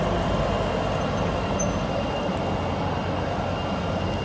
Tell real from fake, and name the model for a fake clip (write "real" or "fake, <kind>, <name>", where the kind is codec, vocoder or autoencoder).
real